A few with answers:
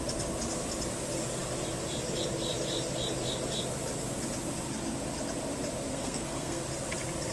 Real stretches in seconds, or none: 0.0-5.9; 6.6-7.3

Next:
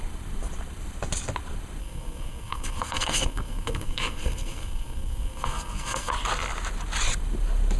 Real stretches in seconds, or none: 0.0-1.8; 6.1-7.8

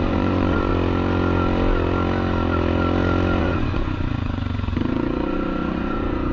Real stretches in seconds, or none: 0.7-3.4

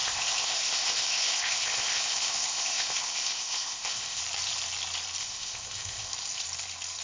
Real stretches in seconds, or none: 4.2-5.2; 6.1-7.0